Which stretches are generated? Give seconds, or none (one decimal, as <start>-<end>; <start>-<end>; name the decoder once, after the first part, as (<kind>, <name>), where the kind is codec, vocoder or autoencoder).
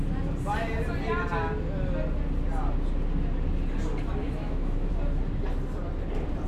4.2-4.9 (autoencoder, DAC-VAE)